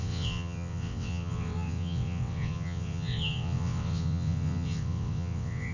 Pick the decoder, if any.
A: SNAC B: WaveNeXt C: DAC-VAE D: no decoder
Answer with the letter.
B